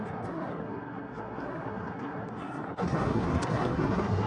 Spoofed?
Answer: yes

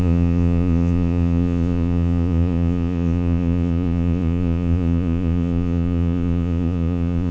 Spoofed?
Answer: yes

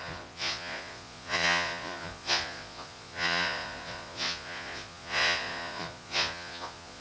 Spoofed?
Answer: yes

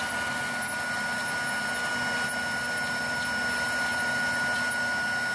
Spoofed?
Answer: no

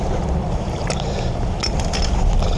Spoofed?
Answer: no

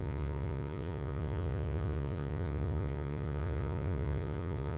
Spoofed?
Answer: yes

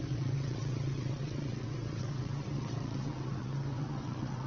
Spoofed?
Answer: yes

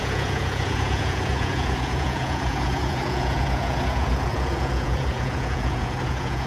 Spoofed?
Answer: yes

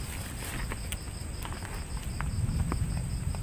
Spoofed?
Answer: no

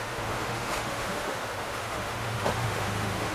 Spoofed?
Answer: yes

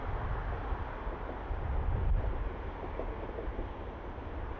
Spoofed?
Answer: no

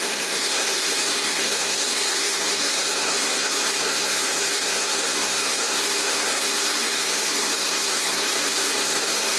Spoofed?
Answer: yes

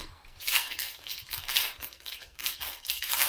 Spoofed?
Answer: yes